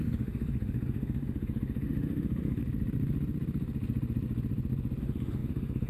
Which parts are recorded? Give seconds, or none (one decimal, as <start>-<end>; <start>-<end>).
2.6-5.0